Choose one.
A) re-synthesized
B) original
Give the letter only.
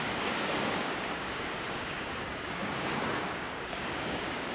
A